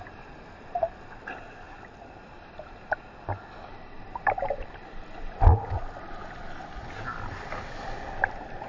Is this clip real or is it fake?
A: real